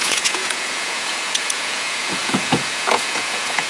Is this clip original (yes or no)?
no